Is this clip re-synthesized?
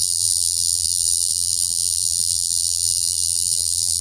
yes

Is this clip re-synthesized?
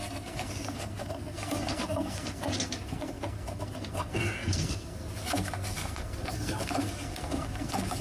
yes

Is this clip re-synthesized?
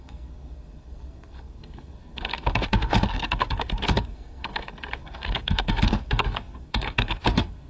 yes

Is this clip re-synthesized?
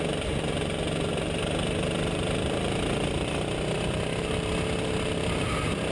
no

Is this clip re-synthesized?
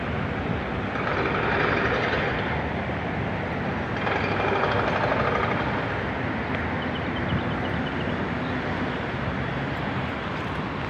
no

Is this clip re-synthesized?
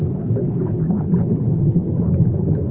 yes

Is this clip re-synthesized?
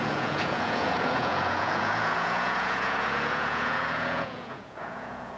yes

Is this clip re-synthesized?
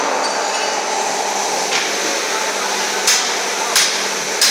no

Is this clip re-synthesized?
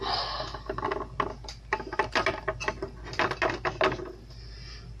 no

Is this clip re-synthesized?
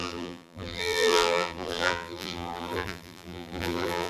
yes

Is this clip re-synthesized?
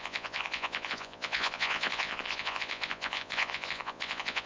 yes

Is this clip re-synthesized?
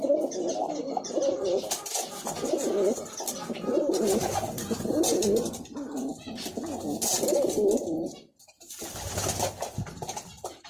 no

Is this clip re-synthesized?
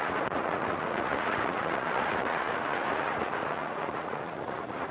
yes